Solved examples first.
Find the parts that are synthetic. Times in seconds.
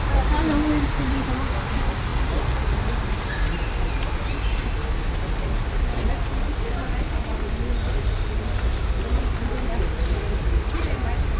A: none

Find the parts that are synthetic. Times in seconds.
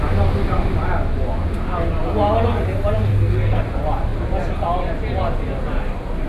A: 3.1-3.6 (codec, SNAC)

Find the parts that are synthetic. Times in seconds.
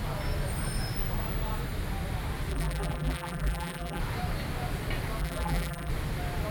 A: 2.5-4.0 (vocoder, BigVGAN v2); 5.2-5.9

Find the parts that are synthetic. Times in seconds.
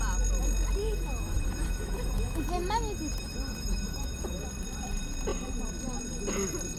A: 0.8-4.4 (autoencoder, DAC-VAE)